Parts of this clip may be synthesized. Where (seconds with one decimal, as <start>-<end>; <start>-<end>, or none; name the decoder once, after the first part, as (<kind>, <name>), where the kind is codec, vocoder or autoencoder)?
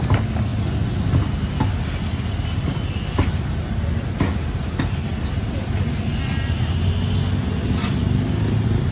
none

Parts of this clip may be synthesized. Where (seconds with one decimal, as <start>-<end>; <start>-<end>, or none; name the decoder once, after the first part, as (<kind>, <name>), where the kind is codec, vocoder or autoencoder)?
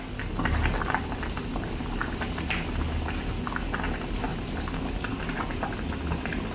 none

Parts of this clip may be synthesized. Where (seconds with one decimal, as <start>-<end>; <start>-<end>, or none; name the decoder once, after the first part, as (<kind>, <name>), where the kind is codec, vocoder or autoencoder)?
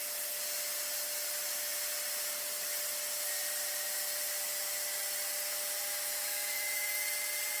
5.8-6.9 (autoencoder, DAC-VAE)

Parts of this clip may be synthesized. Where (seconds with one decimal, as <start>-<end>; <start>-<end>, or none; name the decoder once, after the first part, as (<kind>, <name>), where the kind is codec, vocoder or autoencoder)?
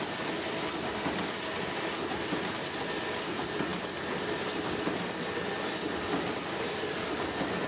none